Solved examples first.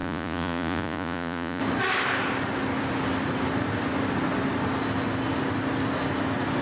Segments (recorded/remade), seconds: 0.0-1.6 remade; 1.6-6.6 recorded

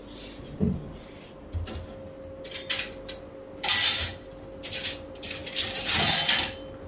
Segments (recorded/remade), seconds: 0.0-6.9 recorded